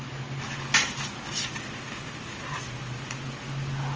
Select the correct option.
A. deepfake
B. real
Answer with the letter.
B